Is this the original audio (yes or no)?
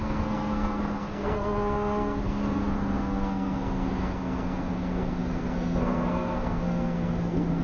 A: no